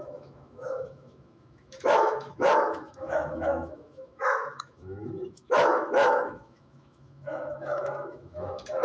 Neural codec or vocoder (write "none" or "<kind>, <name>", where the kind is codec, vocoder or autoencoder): autoencoder, DAC-VAE